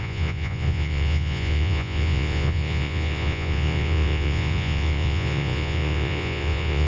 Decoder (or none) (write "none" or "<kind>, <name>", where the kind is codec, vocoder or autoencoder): vocoder, Vocos